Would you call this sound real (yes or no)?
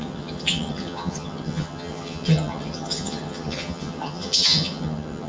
no